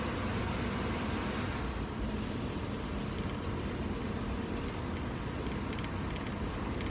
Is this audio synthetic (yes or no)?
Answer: no